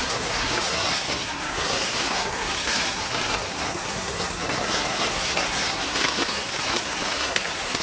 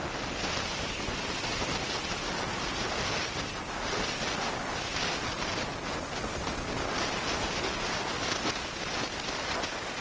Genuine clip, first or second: second